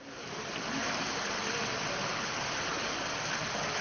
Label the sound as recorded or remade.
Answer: recorded